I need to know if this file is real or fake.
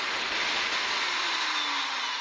real